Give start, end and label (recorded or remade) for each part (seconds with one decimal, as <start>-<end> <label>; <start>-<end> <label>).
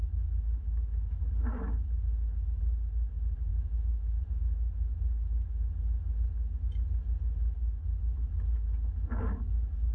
0.0-1.3 remade; 1.3-3.5 recorded; 3.5-4.2 remade; 4.2-9.9 recorded